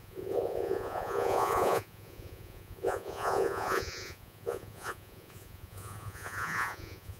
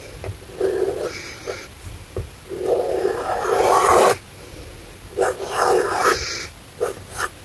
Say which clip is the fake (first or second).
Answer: first